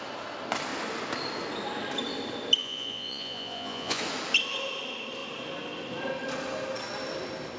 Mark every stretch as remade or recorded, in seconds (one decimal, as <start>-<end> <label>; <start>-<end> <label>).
0.0-2.6 recorded; 2.6-4.0 remade; 4.0-7.6 recorded